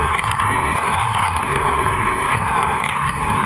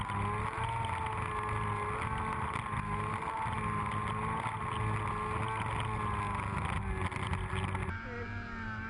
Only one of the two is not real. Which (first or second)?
first